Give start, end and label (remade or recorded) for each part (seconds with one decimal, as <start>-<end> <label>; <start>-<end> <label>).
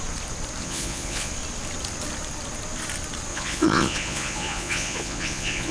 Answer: 0.0-0.6 recorded; 0.6-1.3 remade; 1.3-3.3 recorded; 3.3-5.7 remade